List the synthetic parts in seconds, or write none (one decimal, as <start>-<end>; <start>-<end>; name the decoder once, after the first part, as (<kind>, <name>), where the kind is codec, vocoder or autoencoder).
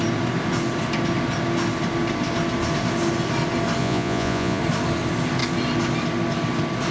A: 3.8-4.6 (vocoder, Vocos)